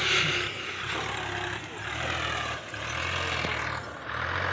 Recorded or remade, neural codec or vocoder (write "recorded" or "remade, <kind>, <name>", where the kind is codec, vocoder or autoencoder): recorded